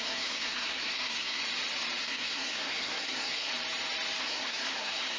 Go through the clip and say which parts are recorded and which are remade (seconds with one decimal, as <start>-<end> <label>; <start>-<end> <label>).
0.0-1.4 remade; 1.4-2.0 recorded; 2.0-3.5 remade; 3.5-4.2 recorded; 4.2-5.2 remade